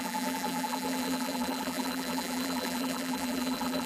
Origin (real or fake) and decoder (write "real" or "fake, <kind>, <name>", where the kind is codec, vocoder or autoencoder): fake, vocoder, BigVGAN v2